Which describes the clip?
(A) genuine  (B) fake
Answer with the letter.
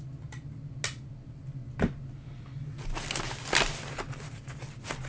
A